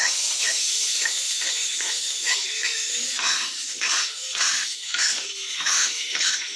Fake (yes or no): yes